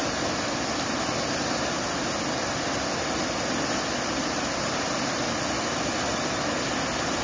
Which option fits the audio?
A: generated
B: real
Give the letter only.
B